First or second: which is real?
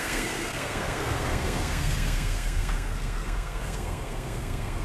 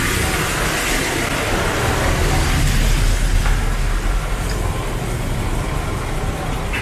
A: second